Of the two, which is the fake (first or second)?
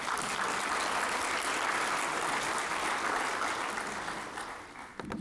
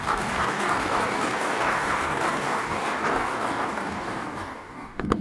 second